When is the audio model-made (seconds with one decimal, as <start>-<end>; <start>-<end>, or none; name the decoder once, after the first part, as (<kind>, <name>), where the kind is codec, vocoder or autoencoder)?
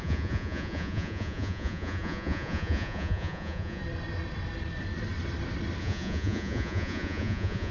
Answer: 0.0-3.8 (vocoder, Vocos); 5.8-7.7